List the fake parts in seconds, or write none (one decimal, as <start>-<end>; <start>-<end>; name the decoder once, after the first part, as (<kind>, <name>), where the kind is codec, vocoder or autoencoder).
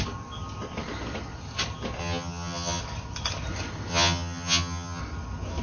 2.0-2.8 (vocoder, HiFi-GAN); 3.9-5.0